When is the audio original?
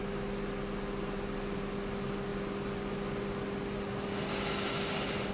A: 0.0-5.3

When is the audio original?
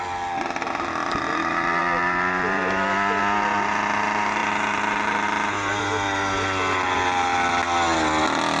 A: 0.0-1.8; 3.2-8.6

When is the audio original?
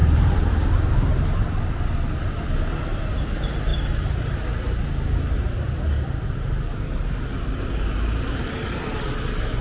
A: 1.4-9.6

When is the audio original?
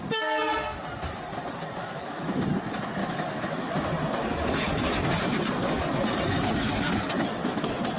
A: 0.0-1.8; 2.4-3.0; 3.7-8.0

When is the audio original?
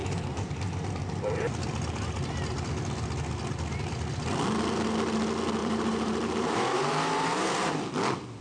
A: 0.5-5.6; 7.7-8.4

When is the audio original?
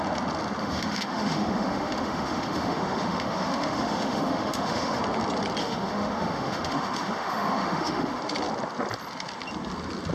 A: 0.0-0.6; 5.0-5.6; 8.2-10.1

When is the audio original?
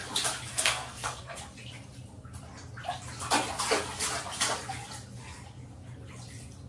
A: 0.0-0.5; 1.4-6.7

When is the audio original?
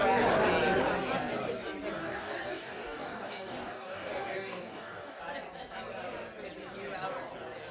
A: 0.0-2.0; 5.2-7.7